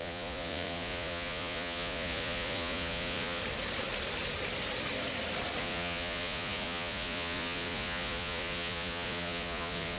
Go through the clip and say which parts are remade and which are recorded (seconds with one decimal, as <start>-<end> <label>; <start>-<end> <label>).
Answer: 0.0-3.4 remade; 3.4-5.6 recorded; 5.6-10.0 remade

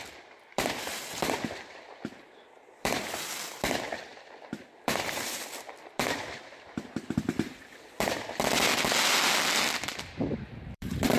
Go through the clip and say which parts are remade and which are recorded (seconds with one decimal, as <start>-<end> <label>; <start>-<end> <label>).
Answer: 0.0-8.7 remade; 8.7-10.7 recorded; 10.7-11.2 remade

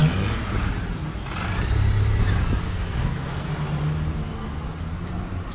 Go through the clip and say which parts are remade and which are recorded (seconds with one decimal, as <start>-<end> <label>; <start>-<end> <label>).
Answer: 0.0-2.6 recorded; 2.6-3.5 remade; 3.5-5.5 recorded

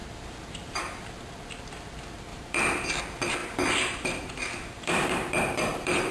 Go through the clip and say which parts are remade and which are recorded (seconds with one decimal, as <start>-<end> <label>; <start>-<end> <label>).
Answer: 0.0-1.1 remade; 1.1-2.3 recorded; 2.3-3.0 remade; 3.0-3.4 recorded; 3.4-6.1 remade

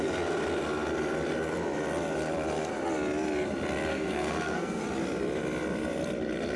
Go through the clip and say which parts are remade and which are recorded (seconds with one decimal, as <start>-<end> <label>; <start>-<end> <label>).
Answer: 0.0-3.9 recorded; 3.9-4.8 remade; 4.8-6.6 recorded

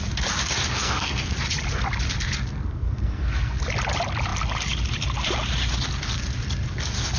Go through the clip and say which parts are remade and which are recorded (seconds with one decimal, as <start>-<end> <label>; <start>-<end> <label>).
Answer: 0.0-0.7 recorded; 0.7-1.3 remade; 1.3-2.5 recorded; 2.5-3.6 remade; 3.6-7.2 recorded

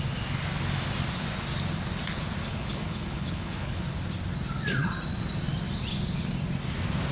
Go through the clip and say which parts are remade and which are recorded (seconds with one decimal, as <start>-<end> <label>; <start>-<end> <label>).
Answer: 0.0-2.4 recorded; 2.4-3.8 remade; 3.8-7.1 recorded